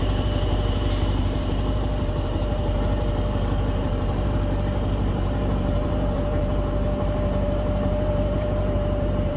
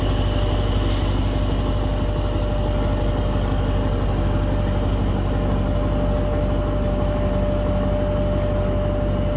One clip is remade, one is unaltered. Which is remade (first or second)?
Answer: first